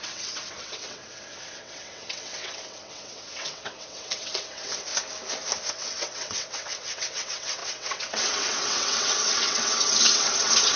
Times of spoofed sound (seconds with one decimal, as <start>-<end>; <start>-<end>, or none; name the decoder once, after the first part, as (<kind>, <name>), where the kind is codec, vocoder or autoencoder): 0.0-4.9 (vocoder, WaveNeXt); 5.7-10.8